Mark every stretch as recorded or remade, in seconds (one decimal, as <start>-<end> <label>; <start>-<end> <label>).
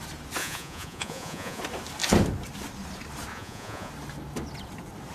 0.0-0.4 recorded; 0.4-1.6 remade; 1.6-3.3 recorded; 3.3-3.9 remade; 3.9-5.1 recorded